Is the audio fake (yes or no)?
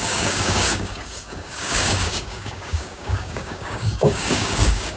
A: yes